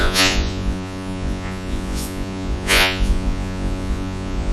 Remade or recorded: remade